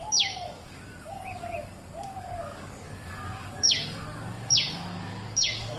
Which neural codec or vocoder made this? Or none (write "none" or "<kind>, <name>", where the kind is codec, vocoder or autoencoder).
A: codec, DAC